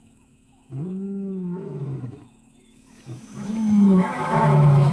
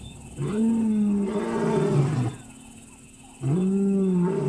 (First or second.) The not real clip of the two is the first